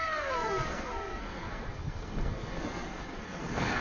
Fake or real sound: fake